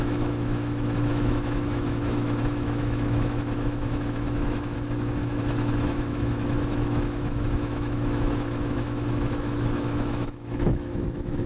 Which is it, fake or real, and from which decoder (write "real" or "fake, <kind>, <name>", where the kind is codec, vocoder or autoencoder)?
fake, autoencoder, DAC-VAE